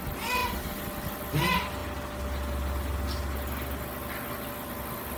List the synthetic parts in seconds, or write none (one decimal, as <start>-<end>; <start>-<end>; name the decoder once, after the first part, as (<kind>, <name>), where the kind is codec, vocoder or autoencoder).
0.4-0.9 (vocoder, BigVGAN v2)